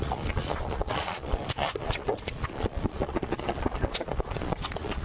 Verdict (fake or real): fake